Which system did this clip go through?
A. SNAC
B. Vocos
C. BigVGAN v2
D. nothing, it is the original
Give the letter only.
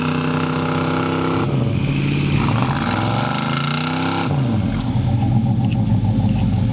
D